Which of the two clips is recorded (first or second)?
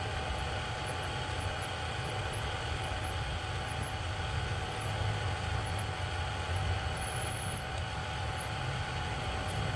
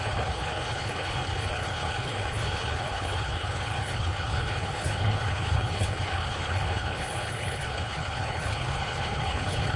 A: first